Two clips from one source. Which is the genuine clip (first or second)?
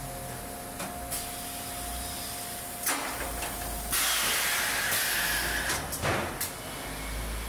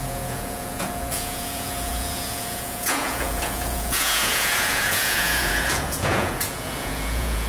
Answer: first